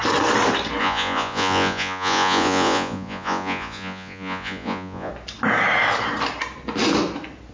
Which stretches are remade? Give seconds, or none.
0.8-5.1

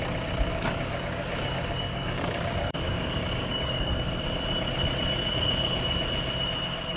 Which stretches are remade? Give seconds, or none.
0.5-4.2

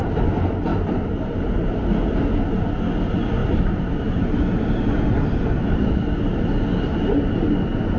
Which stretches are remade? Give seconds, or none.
0.7-1.4; 3.4-4.4

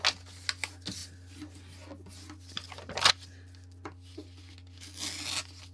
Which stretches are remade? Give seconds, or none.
none

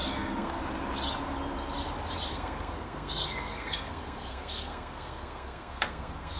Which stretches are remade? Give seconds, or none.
0.0-0.6; 2.3-6.4

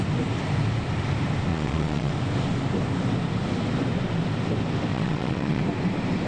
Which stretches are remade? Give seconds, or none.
1.5-2.1; 4.9-5.6

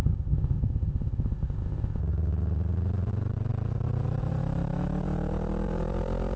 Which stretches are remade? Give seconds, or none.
0.0-2.0

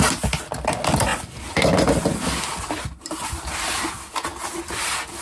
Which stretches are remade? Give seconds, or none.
none